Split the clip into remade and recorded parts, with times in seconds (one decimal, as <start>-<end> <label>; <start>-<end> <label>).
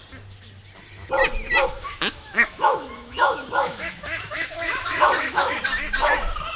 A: 0.0-1.6 recorded; 1.6-5.6 remade; 5.6-6.6 recorded